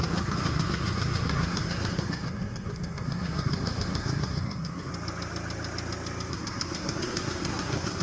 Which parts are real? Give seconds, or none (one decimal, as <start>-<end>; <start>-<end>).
4.9-6.3